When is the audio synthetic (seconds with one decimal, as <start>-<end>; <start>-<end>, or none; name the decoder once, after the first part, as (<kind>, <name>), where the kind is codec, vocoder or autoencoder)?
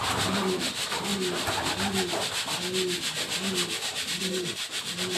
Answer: 0.0-1.1 (vocoder, BigVGAN v2); 4.2-5.2